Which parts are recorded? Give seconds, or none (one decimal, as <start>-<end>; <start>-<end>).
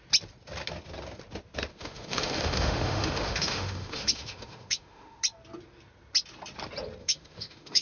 0.0-1.7; 5.2-7.0